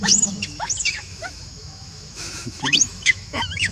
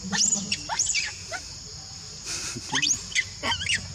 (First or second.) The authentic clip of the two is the second